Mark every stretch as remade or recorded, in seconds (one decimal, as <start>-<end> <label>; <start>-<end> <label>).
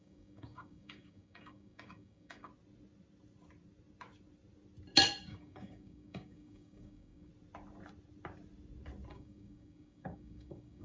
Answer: 0.0-2.5 remade; 2.5-5.2 recorded; 5.2-7.3 remade; 7.3-9.1 recorded; 9.1-10.8 remade